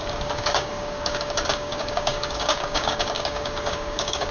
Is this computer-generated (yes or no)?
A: yes